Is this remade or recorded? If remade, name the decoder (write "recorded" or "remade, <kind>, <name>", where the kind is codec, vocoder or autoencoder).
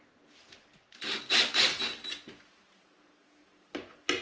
recorded